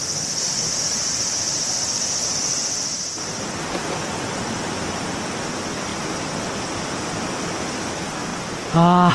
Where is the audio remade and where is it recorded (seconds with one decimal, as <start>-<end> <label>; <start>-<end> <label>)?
0.0-5.0 remade; 5.0-9.1 recorded